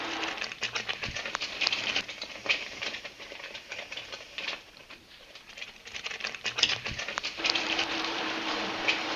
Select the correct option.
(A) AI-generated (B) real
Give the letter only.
A